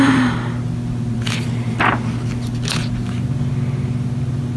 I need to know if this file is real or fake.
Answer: real